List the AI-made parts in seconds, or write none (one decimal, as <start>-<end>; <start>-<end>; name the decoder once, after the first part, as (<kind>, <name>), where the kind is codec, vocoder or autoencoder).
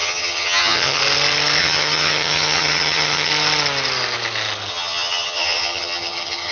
0.0-1.0 (vocoder, HiFi-GAN); 1.6-3.3; 4.7-6.5